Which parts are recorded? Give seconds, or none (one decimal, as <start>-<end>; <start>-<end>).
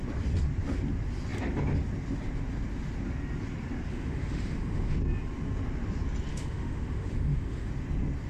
0.0-3.9; 5.0-6.3; 7.7-8.3